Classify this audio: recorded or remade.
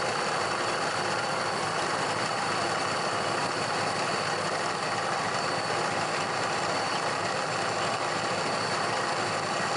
recorded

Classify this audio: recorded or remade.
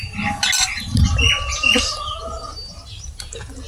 recorded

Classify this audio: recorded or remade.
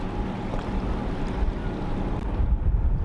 recorded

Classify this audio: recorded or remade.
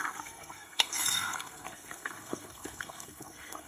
remade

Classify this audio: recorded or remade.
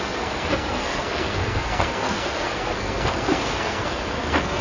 remade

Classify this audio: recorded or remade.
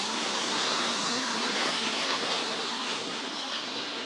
remade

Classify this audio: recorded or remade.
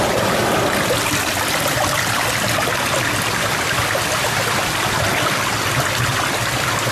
recorded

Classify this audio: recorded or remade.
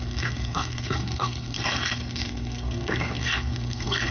remade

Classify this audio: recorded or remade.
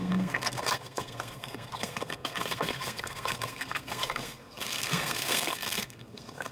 remade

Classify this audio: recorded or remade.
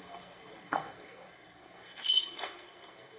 remade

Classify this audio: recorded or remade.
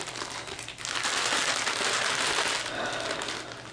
recorded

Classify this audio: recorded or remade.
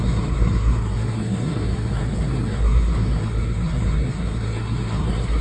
remade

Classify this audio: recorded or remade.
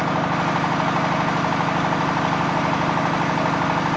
recorded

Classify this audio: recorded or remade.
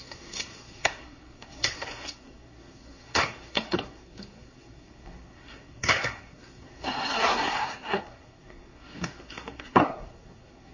remade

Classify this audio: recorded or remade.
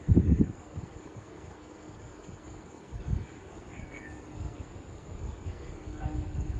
remade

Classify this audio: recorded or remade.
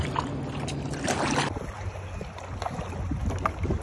recorded